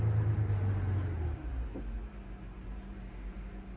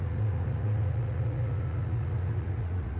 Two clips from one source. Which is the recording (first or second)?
first